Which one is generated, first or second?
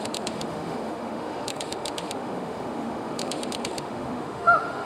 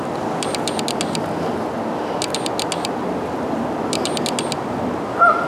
first